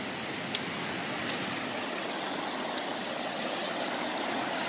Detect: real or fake real